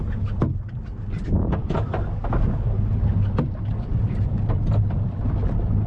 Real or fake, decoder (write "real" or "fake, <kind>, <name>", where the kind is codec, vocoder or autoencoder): real